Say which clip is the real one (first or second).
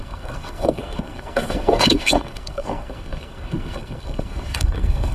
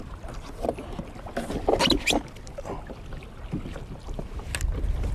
second